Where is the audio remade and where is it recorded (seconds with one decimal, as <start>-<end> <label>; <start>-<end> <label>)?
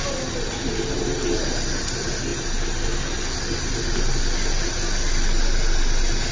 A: 0.0-6.3 recorded